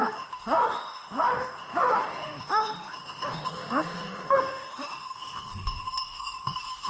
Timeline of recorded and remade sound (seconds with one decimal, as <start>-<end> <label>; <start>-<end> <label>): 0.0-6.9 remade

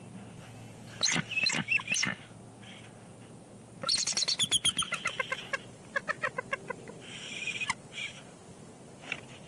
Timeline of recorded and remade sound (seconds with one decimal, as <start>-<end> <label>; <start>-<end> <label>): 0.0-4.8 recorded; 4.8-8.7 remade; 8.7-9.5 recorded

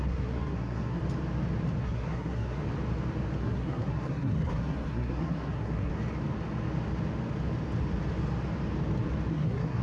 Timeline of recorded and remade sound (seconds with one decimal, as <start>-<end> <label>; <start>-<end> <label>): 0.0-1.0 remade; 1.0-1.8 recorded; 1.8-2.6 remade; 2.6-3.4 recorded; 3.4-5.9 remade; 5.9-9.3 recorded; 9.3-9.8 remade